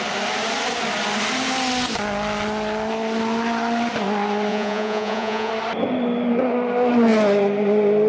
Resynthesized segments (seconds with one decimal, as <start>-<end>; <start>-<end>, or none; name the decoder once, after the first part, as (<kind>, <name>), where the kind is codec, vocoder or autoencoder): 4.5-5.5 (vocoder, Vocos)